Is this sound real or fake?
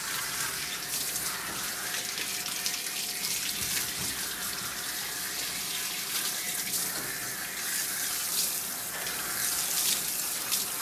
real